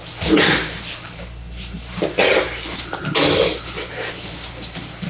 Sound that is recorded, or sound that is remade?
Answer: recorded